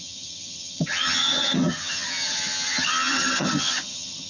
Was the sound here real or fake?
fake